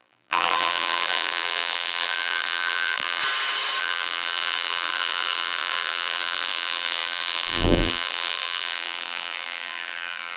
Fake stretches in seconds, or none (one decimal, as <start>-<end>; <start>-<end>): 0.0-3.2; 3.8-10.4

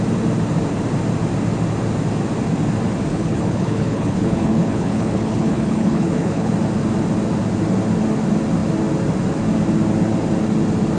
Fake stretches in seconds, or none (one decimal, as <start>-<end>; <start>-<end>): 3.1-6.5